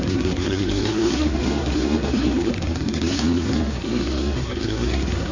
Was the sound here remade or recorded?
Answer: remade